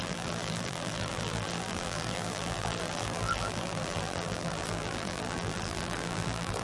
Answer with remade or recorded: remade